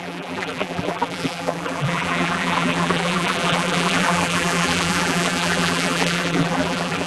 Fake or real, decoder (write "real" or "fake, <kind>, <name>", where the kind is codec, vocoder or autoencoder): fake, vocoder, BigVGAN v2